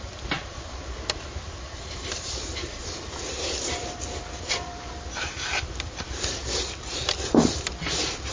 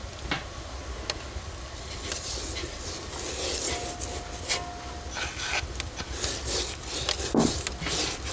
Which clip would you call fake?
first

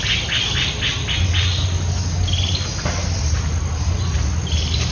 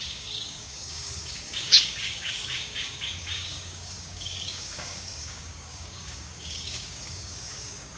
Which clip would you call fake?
second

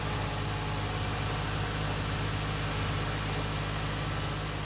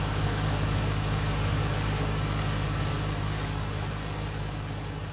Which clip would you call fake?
second